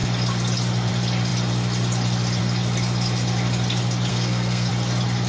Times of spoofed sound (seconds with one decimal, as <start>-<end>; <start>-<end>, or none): 4.1-4.7